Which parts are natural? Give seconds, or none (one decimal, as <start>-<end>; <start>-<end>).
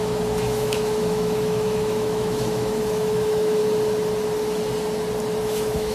3.6-5.4